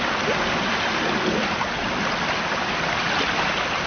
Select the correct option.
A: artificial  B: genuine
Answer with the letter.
B